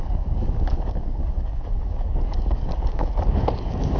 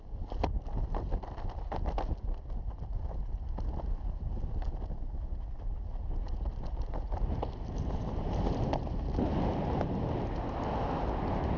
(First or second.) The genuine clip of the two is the second